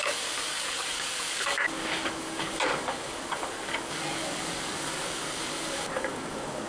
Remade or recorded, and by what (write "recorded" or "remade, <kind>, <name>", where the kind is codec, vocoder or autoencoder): remade, codec, DAC